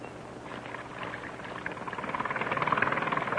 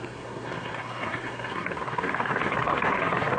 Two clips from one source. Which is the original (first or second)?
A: first